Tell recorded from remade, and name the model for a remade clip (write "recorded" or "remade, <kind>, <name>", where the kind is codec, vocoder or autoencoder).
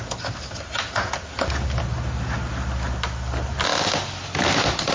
recorded